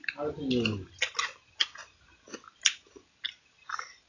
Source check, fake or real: real